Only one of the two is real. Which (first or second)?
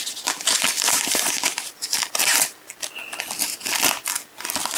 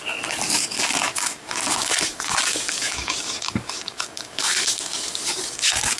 first